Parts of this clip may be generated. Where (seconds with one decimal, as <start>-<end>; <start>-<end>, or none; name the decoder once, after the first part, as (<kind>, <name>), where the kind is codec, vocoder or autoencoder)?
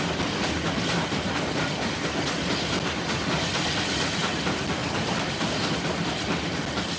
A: none